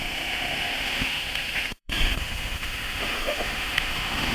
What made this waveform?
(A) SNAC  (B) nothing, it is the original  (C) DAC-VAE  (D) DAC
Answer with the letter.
C